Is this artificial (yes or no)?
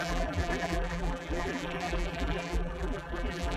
yes